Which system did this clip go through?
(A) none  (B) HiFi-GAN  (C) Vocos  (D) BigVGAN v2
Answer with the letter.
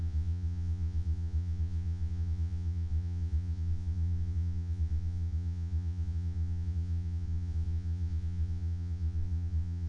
C